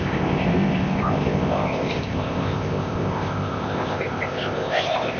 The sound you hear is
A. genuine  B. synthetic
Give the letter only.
B